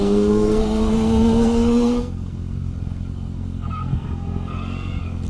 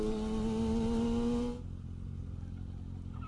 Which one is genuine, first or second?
second